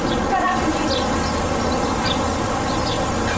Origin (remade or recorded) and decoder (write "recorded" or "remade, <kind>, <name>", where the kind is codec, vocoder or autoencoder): recorded